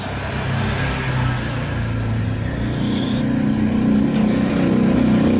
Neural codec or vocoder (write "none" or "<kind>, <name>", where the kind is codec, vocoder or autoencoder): none